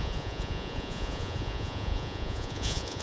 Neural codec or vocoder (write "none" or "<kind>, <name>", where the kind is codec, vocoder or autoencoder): vocoder, Vocos